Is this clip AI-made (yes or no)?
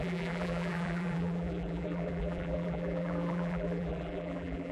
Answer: yes